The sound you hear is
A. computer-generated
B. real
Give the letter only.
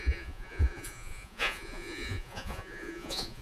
A